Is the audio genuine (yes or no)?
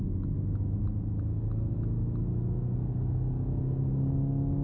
yes